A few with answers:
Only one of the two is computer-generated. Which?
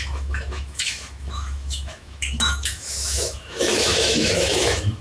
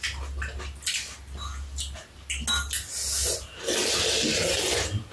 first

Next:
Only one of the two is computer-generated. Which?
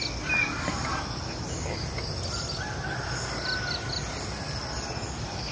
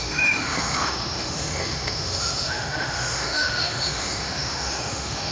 second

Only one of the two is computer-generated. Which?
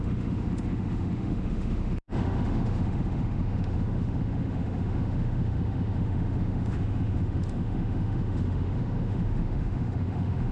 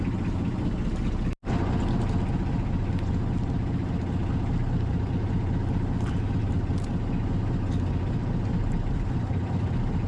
first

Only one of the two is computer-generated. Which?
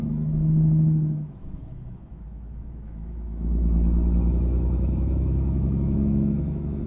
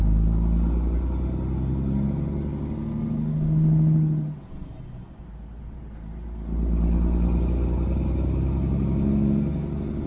first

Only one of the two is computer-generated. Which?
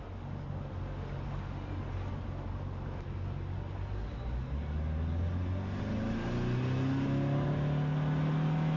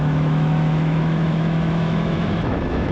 second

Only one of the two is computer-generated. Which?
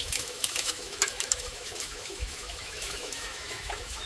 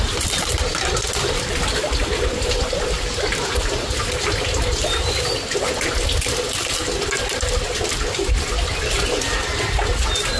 first